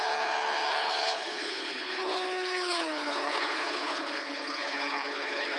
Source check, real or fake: fake